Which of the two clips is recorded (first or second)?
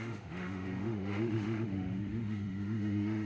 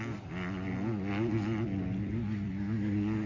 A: second